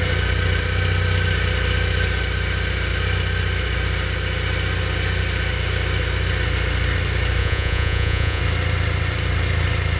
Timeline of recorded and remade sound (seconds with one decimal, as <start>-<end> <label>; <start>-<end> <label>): 0.0-7.4 recorded; 7.4-8.4 remade; 8.4-10.0 recorded